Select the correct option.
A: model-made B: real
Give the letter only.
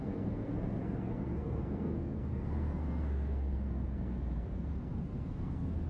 A